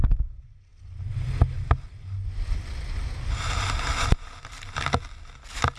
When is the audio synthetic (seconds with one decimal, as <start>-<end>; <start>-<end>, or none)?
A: none